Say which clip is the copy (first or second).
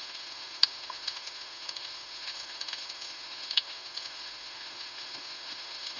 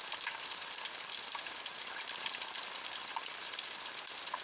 first